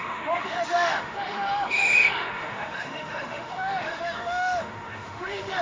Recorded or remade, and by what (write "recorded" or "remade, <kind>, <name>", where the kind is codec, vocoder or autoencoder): remade, autoencoder, DAC-VAE